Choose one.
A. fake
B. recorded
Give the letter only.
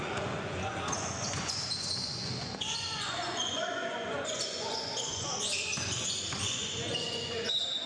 A